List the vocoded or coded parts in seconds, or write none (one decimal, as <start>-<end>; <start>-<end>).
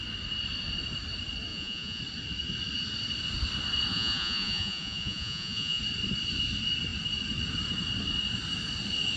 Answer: 1.5-2.0; 3.9-5.8